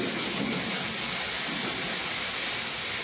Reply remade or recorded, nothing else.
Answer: recorded